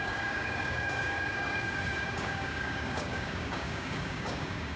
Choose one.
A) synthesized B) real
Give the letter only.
A